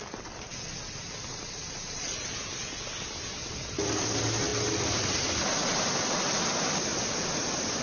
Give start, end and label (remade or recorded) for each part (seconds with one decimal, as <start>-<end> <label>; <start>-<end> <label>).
0.0-7.8 recorded